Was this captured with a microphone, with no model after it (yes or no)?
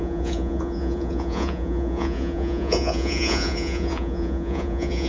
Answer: no